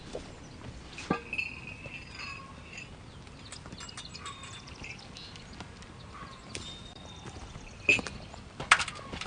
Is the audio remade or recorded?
recorded